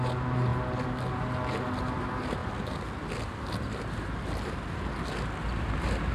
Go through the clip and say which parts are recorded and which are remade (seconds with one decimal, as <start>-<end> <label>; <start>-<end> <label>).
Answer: 0.0-6.1 recorded